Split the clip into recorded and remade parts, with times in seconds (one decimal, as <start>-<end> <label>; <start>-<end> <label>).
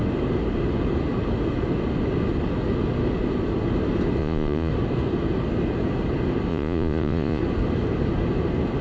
0.0-4.2 recorded; 4.2-4.7 remade; 4.7-6.5 recorded; 6.5-7.4 remade; 7.4-8.8 recorded